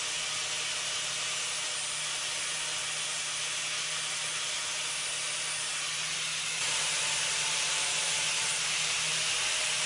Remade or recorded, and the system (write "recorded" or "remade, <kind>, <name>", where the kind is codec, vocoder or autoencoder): recorded